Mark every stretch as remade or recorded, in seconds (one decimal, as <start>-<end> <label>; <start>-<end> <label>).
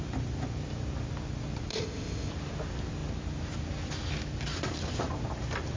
0.0-1.7 recorded; 1.7-2.3 remade; 2.3-5.8 recorded